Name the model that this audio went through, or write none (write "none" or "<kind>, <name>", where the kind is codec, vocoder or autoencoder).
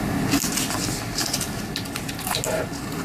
none